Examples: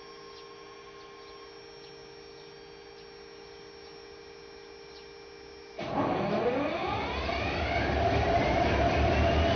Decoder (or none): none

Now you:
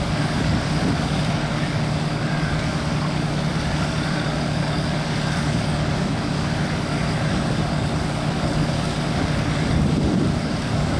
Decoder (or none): codec, DAC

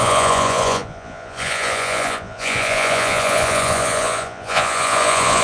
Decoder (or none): vocoder, Vocos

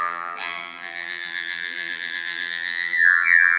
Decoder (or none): vocoder, BigVGAN v2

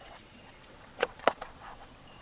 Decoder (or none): vocoder, WaveNeXt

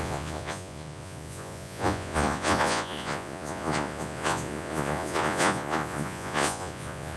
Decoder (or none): vocoder, Vocos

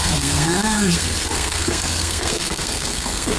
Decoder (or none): codec, SNAC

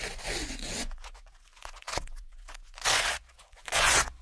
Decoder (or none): vocoder, Vocos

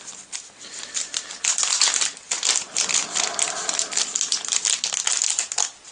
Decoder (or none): none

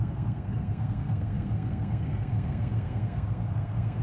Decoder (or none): codec, SNAC